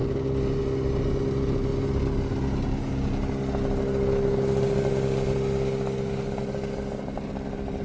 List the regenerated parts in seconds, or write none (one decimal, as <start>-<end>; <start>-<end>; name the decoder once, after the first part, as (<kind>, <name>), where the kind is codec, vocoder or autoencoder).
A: none